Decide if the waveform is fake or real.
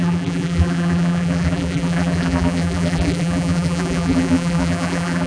fake